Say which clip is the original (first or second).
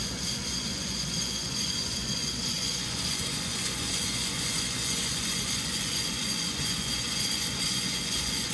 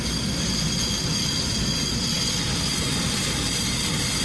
second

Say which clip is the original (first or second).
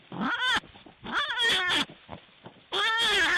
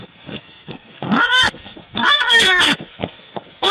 first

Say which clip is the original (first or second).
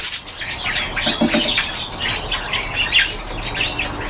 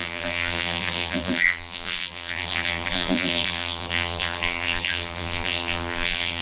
first